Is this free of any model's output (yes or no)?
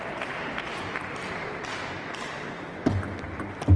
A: yes